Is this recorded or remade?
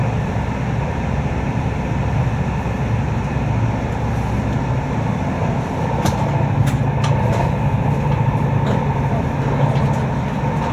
recorded